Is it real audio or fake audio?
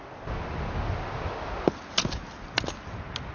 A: real